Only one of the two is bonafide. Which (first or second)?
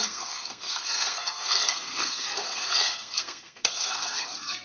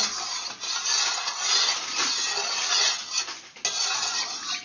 second